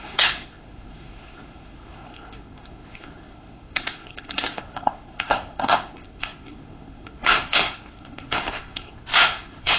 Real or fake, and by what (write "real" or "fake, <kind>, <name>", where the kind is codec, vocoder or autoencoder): fake, codec, SNAC